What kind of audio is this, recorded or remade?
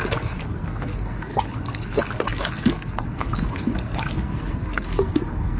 remade